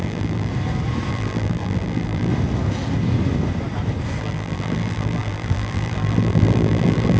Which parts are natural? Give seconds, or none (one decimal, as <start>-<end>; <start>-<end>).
0.5-1.1; 2.3-4.2